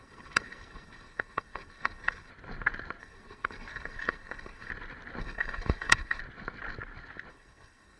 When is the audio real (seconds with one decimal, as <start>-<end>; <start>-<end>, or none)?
2.3-3.0; 4.7-5.2; 6.2-7.3